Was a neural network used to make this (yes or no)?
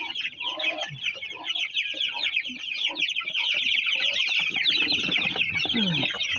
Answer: no